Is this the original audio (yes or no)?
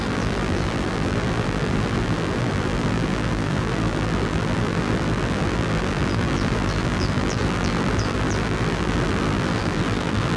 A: no